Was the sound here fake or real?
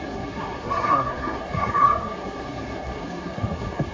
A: fake